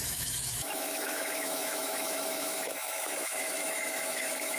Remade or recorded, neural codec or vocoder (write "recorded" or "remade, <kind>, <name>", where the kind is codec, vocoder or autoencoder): remade, autoencoder, DAC-VAE